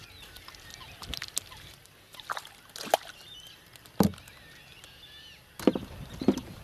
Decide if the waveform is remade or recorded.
recorded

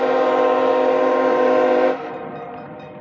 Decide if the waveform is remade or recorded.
remade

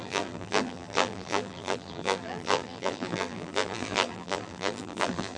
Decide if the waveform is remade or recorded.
remade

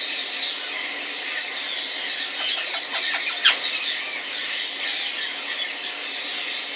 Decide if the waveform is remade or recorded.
recorded